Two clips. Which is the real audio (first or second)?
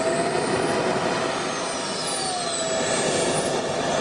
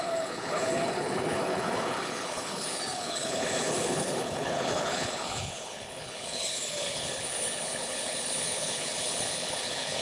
first